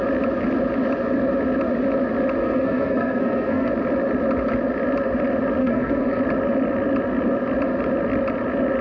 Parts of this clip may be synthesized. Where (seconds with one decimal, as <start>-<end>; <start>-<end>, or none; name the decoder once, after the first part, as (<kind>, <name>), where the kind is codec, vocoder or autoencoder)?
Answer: 2.4-3.7 (codec, SNAC); 5.6-6.2